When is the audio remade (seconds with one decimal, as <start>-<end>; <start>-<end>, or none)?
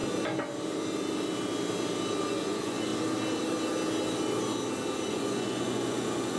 2.3-2.9; 5.1-6.4